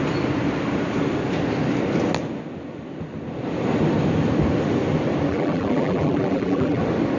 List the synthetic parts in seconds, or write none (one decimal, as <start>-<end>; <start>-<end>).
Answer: 5.3-6.8